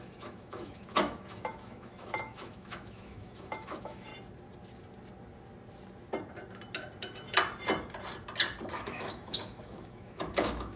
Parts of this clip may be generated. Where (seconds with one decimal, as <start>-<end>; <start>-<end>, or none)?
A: 0.0-4.1; 8.7-10.8